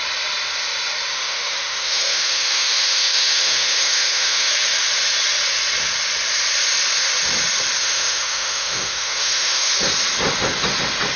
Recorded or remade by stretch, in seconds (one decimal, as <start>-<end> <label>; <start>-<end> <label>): 0.0-1.1 recorded; 1.1-4.5 remade; 4.5-7.8 recorded; 7.8-9.7 remade; 9.7-11.2 recorded